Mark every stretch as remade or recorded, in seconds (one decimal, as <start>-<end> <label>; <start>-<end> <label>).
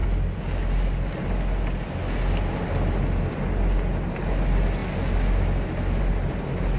0.0-6.8 recorded